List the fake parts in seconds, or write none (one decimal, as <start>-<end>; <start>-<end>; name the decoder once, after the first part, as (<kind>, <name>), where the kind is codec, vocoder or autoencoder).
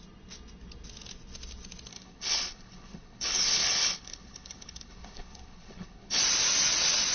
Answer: 1.9-6.2 (codec, HILCodec)